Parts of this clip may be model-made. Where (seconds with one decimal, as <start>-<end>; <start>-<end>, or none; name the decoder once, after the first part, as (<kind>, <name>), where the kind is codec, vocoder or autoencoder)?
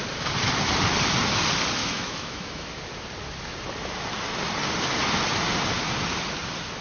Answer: 1.8-2.8 (autoencoder, DAC-VAE)